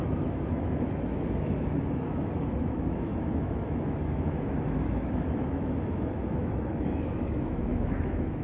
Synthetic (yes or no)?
yes